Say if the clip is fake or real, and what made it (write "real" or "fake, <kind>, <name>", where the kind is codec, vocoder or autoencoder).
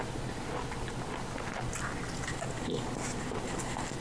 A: real